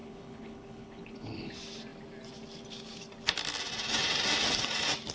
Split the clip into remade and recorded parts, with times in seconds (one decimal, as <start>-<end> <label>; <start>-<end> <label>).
0.0-1.5 remade; 1.5-5.1 recorded